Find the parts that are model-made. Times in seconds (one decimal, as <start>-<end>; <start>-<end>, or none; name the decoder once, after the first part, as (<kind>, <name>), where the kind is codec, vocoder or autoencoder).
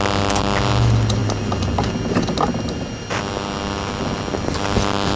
none